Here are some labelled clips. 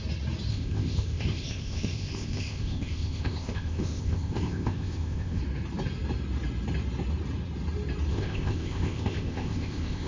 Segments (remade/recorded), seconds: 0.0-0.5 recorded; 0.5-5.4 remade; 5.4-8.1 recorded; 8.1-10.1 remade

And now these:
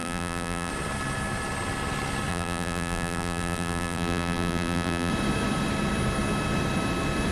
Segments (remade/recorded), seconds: 0.0-0.7 remade; 0.7-2.3 recorded; 2.3-5.1 remade; 5.1-7.3 recorded

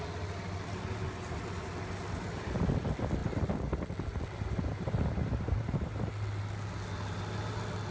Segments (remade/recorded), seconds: 0.0-7.9 recorded

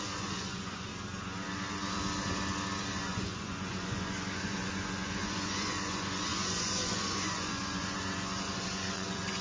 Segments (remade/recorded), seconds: 0.0-0.9 remade; 0.9-2.9 recorded; 2.9-9.4 remade

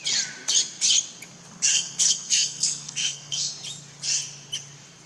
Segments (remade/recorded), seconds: 0.0-1.7 recorded; 1.7-3.5 remade; 3.5-5.1 recorded